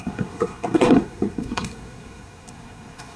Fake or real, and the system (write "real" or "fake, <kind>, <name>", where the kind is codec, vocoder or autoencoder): fake, codec, SNAC